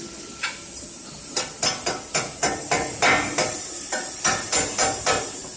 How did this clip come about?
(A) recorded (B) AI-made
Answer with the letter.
A